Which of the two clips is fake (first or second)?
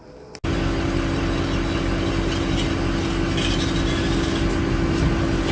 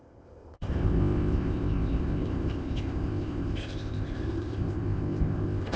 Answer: second